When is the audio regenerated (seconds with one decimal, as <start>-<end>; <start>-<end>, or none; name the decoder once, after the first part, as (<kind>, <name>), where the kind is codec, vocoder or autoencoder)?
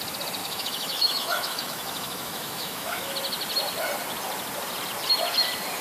0.4-3.1 (autoencoder, DAC-VAE)